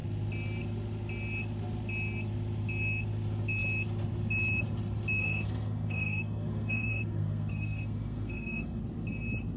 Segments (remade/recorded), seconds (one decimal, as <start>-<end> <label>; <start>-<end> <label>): 0.0-5.2 recorded; 5.2-8.8 remade; 8.8-9.6 recorded

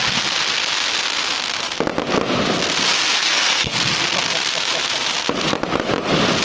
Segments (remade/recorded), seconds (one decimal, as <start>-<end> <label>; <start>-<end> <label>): 0.0-3.2 recorded; 3.2-3.9 remade; 3.9-6.4 recorded

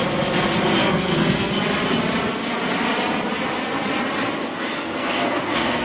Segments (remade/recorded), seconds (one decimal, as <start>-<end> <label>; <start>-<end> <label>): 0.0-0.8 recorded; 0.8-1.5 remade; 1.5-4.5 recorded; 4.5-5.8 remade

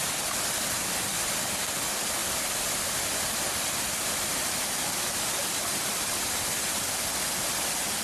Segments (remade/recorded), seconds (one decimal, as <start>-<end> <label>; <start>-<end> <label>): 0.0-8.0 recorded

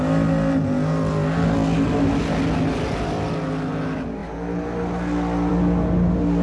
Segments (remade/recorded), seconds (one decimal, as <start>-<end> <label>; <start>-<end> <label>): 0.0-6.4 recorded